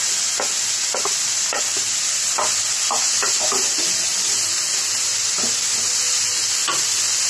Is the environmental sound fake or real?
real